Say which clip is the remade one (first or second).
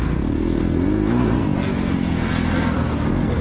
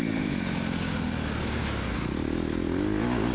first